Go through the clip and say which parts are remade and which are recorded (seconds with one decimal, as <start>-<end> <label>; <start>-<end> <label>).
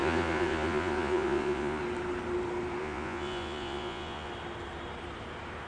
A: 0.0-1.8 remade; 1.8-2.8 recorded; 2.8-4.3 remade; 4.3-5.7 recorded